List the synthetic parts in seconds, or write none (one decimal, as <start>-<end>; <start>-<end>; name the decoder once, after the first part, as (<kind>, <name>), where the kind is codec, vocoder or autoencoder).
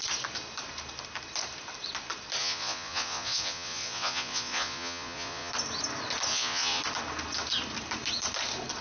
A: 2.4-5.5 (vocoder, Vocos); 6.3-6.8